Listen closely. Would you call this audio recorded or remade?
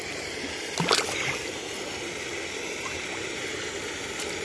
recorded